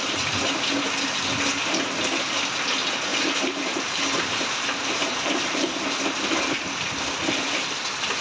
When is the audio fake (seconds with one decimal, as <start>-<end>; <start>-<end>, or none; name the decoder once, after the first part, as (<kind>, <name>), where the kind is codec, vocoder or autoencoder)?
3.1-5.6 (vocoder, BigVGAN v2)